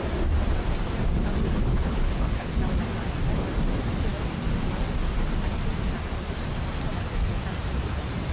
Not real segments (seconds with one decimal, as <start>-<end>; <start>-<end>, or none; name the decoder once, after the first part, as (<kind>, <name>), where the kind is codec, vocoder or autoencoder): 1.7-2.5 (codec, HILCodec)